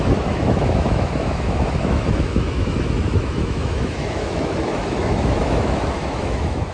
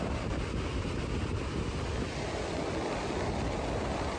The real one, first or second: second